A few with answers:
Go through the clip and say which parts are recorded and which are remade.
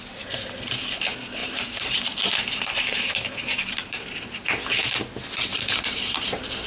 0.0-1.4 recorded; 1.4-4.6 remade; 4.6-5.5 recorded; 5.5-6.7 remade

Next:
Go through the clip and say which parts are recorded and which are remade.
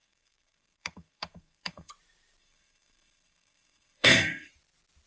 0.0-1.9 remade; 1.9-2.4 recorded; 2.4-4.5 remade; 4.5-5.1 recorded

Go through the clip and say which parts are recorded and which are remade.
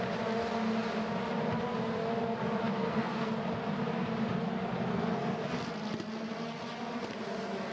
0.0-2.6 recorded; 2.6-3.3 remade; 3.3-4.9 recorded; 4.9-5.5 remade; 5.5-7.7 recorded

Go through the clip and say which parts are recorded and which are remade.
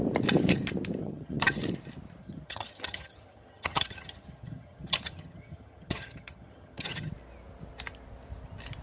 0.0-1.0 recorded; 1.0-1.6 remade; 1.6-2.2 recorded; 2.2-7.1 remade; 7.1-8.8 recorded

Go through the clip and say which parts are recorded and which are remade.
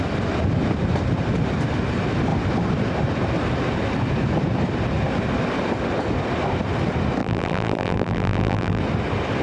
0.0-7.2 recorded; 7.2-8.8 remade; 8.8-9.4 recorded